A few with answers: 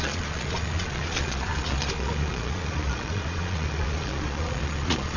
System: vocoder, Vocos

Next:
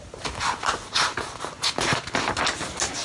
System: none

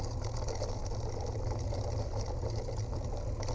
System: none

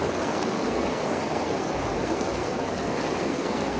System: codec, SNAC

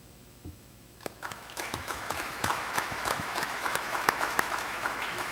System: autoencoder, DAC-VAE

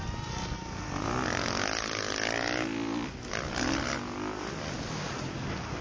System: none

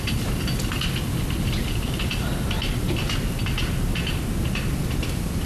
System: none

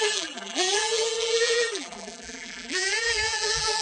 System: vocoder, BigVGAN v2